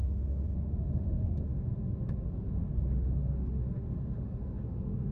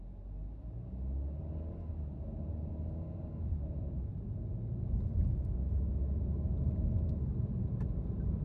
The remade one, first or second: first